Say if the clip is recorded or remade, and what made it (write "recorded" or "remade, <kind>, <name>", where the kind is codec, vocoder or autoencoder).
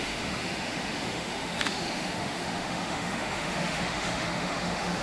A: remade, autoencoder, DAC-VAE